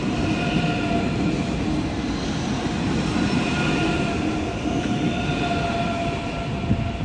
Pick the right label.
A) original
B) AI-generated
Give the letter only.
A